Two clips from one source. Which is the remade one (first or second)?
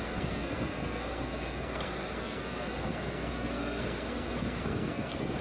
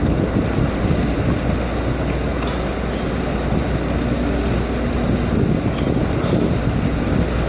first